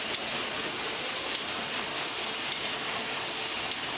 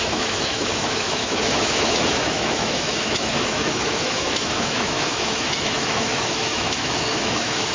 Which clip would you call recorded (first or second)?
first